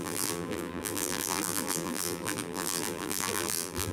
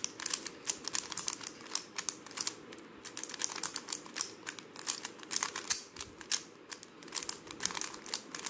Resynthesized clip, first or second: first